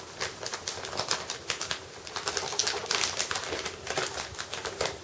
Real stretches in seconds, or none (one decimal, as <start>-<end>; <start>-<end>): 0.0-5.0